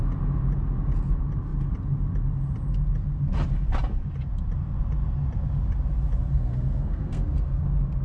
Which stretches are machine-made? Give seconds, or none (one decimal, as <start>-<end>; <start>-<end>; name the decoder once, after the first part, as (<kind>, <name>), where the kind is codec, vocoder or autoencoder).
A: 6.3-7.6 (codec, SNAC)